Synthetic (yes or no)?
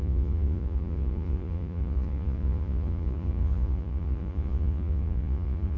yes